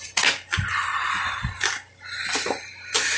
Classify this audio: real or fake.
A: real